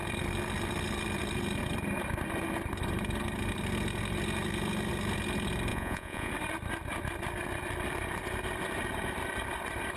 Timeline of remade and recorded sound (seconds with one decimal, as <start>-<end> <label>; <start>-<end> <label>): 0.0-5.7 recorded; 5.7-6.3 remade; 6.3-10.0 recorded

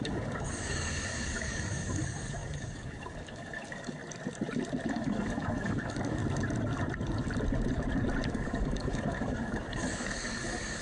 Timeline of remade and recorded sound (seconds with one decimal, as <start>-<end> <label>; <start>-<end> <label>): 0.0-4.0 remade; 4.0-4.9 recorded; 4.9-6.2 remade; 6.2-8.3 recorded; 8.3-10.8 remade

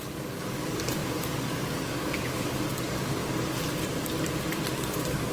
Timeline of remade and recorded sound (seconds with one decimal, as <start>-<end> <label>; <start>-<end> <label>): 0.0-3.2 remade; 3.2-4.7 recorded; 4.7-5.3 remade

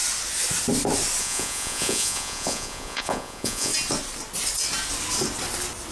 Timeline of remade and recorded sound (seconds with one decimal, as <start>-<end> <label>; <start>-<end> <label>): 0.0-1.2 recorded; 1.2-3.7 remade; 3.7-5.9 recorded

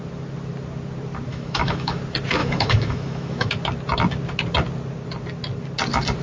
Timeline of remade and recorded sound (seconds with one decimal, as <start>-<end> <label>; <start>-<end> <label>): 0.0-1.3 recorded; 1.3-2.0 remade; 2.0-2.4 recorded; 2.4-3.5 remade; 3.5-6.2 recorded

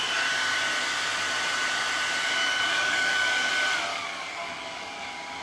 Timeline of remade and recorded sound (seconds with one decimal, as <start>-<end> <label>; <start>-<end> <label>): 0.0-2.4 recorded; 2.4-3.5 remade; 3.5-3.9 recorded; 3.9-5.4 remade